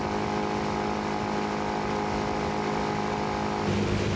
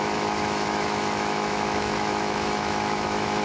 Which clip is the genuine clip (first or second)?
first